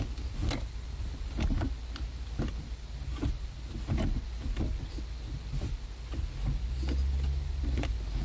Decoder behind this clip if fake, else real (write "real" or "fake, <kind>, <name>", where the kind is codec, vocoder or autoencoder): real